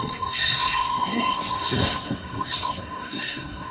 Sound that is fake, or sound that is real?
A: fake